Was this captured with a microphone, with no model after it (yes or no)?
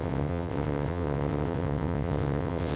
no